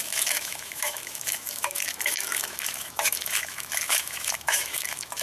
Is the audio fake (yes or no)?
yes